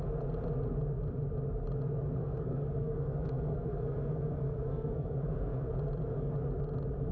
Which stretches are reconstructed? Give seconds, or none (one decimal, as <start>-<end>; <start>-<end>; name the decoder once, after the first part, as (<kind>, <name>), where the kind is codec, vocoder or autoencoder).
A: 2.2-5.7 (codec, SNAC)